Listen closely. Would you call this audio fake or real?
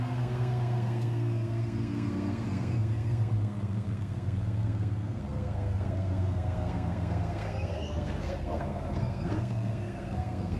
fake